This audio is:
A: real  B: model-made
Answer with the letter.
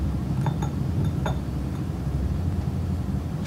A